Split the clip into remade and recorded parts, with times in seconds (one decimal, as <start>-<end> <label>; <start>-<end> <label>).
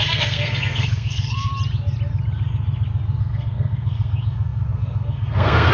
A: 0.0-1.5 remade; 1.5-3.2 recorded; 3.2-5.7 remade